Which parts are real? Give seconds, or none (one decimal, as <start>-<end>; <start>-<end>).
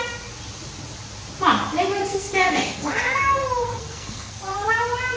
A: 0.0-2.0; 4.7-5.2